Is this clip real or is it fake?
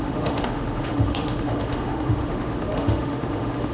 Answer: fake